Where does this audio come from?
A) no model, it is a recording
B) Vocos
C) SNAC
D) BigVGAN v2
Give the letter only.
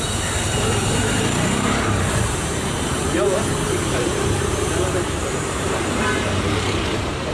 D